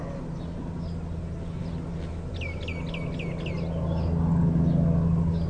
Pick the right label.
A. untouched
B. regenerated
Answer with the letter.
A